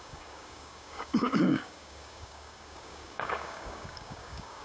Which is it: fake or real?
fake